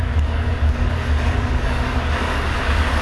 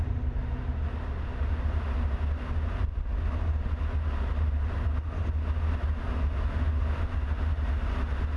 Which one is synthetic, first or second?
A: first